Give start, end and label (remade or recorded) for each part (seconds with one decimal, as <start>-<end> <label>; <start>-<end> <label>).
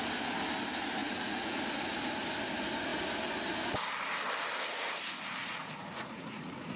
0.0-1.0 recorded; 1.0-1.6 remade; 1.6-5.6 recorded; 5.6-6.8 remade